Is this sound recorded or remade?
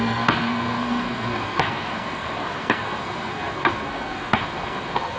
remade